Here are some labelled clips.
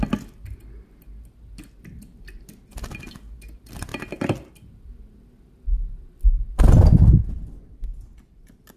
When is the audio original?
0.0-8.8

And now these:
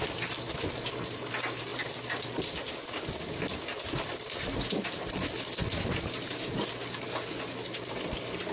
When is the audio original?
0.0-8.5

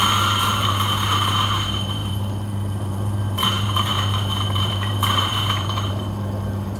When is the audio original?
none